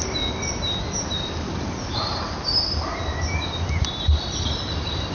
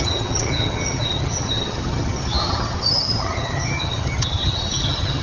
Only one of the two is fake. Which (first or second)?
second